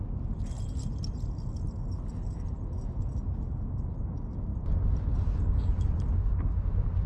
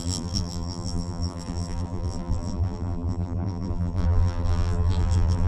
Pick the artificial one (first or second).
second